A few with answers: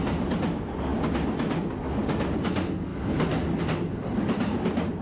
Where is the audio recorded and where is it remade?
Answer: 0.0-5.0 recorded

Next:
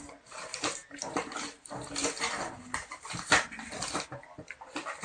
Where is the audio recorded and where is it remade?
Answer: 0.0-5.0 recorded

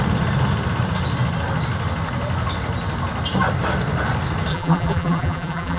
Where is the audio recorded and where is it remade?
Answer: 0.0-4.5 recorded; 4.5-5.8 remade

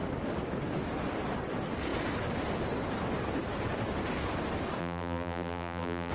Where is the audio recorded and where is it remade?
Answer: 0.0-4.8 recorded; 4.8-6.1 remade

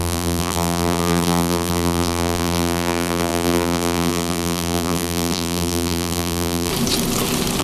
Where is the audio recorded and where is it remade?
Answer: 0.0-6.7 remade; 6.7-7.6 recorded

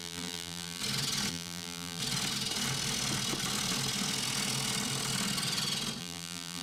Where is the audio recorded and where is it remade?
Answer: 0.0-0.8 remade; 0.8-1.3 recorded; 1.3-2.0 remade; 2.0-6.0 recorded; 6.0-6.6 remade